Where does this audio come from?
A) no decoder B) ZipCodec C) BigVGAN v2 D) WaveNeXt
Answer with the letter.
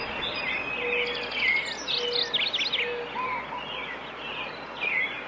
A